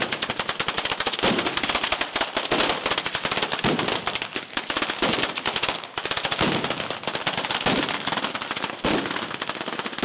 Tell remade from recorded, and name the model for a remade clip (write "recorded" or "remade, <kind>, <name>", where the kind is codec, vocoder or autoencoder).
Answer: recorded